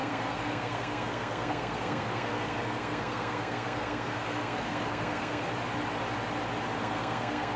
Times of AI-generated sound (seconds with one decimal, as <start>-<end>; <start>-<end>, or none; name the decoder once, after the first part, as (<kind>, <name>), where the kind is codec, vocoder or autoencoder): 0.0-5.5 (codec, SNAC); 6.8-7.6